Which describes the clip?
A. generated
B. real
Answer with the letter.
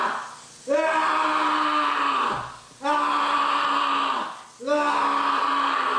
B